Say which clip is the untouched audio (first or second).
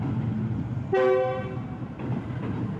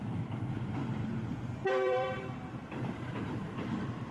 first